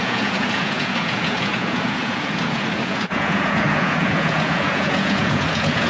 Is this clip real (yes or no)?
no